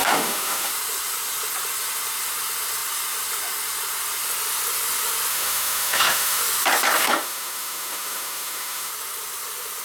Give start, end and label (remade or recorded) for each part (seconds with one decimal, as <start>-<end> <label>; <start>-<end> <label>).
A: 0.0-0.7 remade; 0.7-5.3 recorded; 5.3-6.4 remade; 6.4-7.0 recorded; 7.0-8.9 remade; 8.9-9.8 recorded